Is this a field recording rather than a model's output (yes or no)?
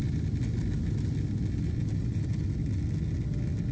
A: yes